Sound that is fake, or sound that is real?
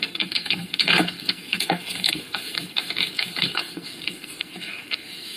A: fake